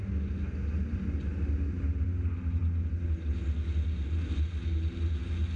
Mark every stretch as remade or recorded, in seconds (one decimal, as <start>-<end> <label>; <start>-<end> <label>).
0.0-5.6 recorded